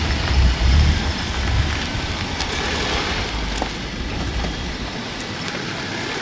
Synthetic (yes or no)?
no